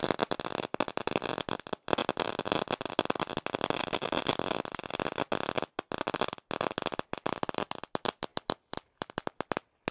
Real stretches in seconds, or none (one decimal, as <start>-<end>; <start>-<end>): 0.0-9.9